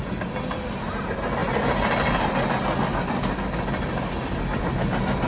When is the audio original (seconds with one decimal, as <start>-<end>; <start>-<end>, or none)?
0.0-5.3